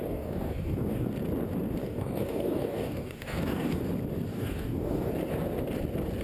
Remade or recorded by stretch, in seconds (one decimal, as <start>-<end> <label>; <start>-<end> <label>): 0.0-1.1 remade; 1.1-1.8 recorded; 1.8-3.8 remade; 3.8-4.3 recorded; 4.3-5.1 remade; 5.1-6.2 recorded